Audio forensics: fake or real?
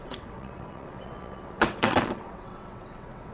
fake